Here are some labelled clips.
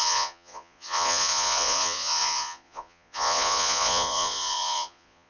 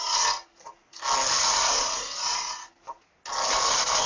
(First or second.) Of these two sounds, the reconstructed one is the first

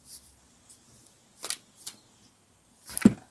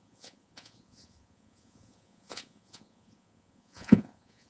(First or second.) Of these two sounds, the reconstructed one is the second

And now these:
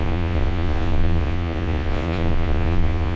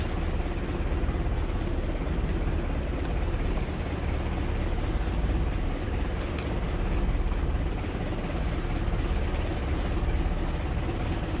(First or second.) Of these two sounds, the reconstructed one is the first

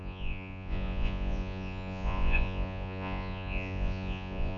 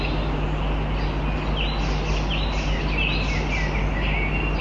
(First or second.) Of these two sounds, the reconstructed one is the first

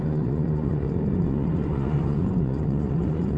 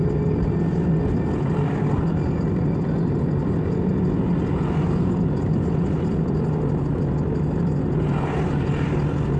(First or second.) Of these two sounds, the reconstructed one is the first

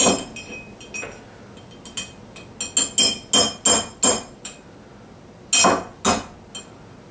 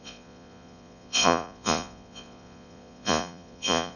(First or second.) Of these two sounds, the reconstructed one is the second